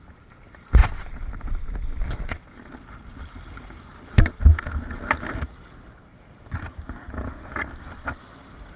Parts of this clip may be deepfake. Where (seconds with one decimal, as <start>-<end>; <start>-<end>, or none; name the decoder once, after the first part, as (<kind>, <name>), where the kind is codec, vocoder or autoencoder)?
none

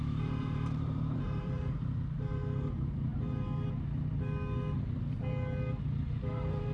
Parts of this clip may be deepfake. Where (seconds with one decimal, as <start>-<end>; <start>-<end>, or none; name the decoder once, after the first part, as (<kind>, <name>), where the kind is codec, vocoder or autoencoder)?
0.0-3.1 (vocoder, BigVGAN v2); 5.8-6.7

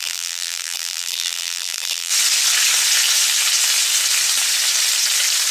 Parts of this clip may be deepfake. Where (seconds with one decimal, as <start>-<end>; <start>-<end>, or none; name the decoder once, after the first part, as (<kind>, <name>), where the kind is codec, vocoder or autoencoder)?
0.0-2.1 (vocoder, BigVGAN v2)

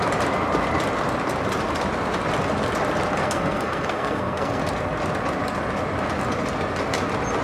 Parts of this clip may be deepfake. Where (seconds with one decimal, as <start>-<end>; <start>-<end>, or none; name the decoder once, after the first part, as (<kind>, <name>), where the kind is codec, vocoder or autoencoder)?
3.2-4.6 (codec, SNAC)

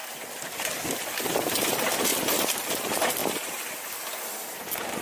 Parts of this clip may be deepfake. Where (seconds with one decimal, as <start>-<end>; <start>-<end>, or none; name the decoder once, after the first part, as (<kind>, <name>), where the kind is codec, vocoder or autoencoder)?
none

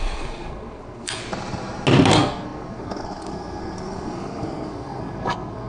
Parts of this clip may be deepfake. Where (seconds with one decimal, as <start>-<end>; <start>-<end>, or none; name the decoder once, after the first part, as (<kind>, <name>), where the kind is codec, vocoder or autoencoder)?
0.0-1.2 (codec, SNAC); 2.1-5.7

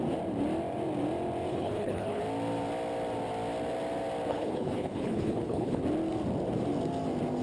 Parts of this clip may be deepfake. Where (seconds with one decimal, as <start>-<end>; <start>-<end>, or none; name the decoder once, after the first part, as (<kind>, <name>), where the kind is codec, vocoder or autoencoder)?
1.5-2.2 (codec, HILCodec); 4.3-5.8